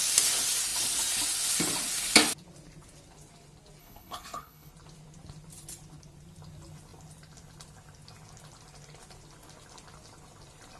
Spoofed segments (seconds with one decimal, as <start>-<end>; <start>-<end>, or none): 3.8-4.7